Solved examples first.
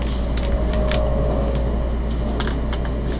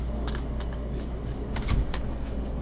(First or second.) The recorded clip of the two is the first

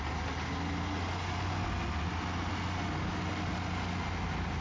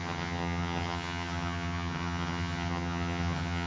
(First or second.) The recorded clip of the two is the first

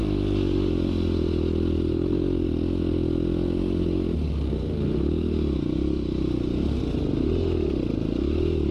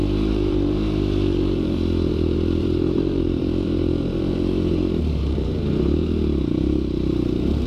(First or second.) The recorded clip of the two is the first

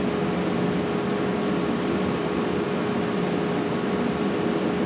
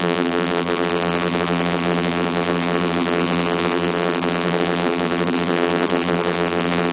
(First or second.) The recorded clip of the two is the first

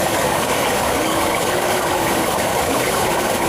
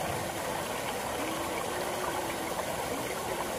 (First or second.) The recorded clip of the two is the second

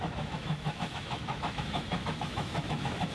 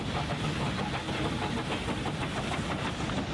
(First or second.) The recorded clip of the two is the second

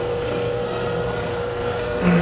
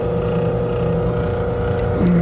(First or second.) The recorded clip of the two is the second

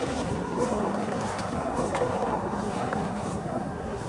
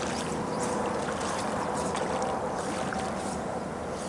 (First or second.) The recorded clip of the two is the second